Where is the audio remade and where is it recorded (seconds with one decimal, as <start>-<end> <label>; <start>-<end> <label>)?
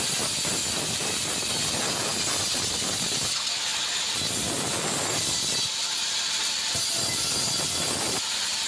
0.0-0.6 recorded; 0.6-1.5 remade; 1.5-8.7 recorded